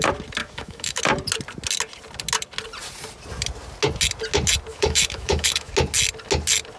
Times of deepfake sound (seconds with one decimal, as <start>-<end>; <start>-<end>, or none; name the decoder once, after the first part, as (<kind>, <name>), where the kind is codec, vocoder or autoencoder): 0.4-1.0 (autoencoder, DAC-VAE); 4.7-5.7

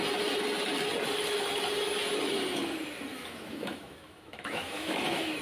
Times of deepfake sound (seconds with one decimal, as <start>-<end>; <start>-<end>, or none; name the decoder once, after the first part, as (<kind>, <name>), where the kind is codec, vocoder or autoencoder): 3.1-5.4 (autoencoder, DAC-VAE)

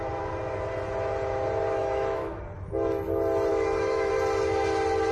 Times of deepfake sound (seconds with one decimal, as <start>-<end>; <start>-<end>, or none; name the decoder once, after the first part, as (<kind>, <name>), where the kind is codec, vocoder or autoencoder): 1.8-2.4 (autoencoder, DAC-VAE); 3.5-4.1

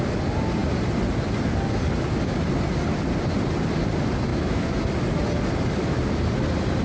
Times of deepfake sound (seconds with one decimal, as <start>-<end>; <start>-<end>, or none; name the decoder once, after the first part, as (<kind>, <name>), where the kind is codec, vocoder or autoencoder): 4.3-4.8 (autoencoder, DAC-VAE)

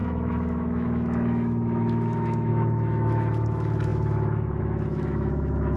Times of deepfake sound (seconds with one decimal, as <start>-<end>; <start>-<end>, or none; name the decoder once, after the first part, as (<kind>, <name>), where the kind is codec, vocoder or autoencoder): 0.0-5.8 (autoencoder, DAC-VAE)

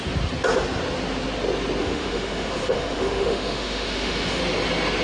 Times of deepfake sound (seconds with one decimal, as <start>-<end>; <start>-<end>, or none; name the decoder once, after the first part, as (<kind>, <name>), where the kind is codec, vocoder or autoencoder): 1.8-4.4 (autoencoder, DAC-VAE)